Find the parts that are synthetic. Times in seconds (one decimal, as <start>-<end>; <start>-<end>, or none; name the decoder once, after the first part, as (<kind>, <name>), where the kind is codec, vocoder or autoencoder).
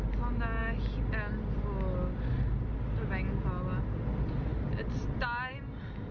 none